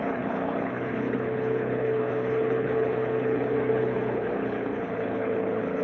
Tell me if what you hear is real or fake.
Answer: fake